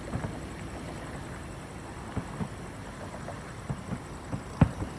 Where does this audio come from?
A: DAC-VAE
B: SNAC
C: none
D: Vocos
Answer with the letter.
C